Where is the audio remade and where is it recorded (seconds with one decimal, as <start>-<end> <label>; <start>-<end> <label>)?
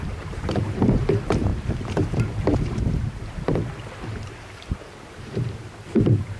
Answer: 0.0-6.4 remade